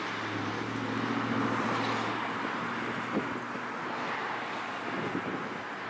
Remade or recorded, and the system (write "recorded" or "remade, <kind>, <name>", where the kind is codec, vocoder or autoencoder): recorded